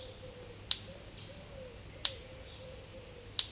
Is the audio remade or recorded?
recorded